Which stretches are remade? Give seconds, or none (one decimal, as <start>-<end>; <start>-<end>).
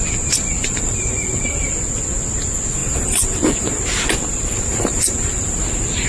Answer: 0.6-1.7; 2.8-3.8; 4.7-5.6